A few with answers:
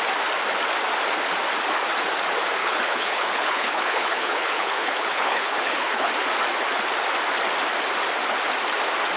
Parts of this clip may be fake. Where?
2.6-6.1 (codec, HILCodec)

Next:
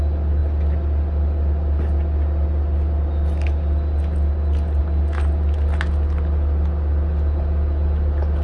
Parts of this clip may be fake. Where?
none